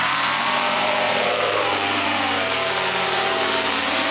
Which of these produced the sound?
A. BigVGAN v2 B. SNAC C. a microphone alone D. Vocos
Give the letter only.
A